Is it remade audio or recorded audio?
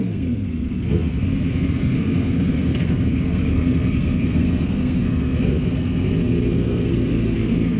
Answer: remade